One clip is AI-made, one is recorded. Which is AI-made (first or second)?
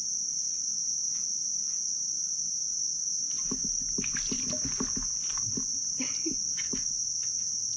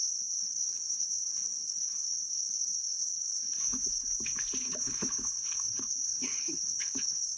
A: second